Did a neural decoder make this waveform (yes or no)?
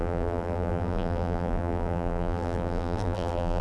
yes